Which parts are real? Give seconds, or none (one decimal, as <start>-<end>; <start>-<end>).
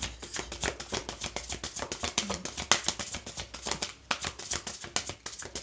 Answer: 0.0-5.6